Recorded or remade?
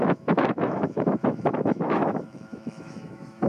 remade